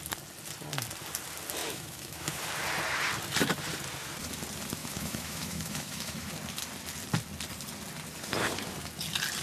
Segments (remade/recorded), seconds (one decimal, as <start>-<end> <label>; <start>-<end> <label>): 0.0-1.6 recorded; 1.6-2.4 remade; 2.4-4.8 recorded; 4.8-6.3 remade; 6.3-9.4 recorded